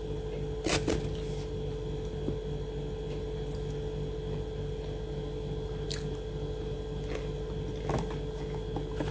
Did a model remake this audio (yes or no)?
no